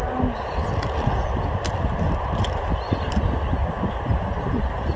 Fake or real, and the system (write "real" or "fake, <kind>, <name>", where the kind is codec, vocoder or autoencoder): real